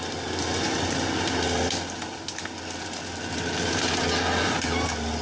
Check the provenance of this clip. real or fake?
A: real